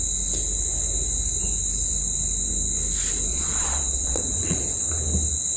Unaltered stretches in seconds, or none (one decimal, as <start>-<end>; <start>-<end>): 0.0-3.3; 4.9-5.6